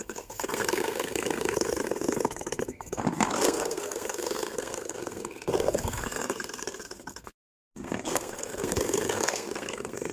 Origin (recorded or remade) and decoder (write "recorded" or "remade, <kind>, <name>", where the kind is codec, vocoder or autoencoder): remade, codec, SNAC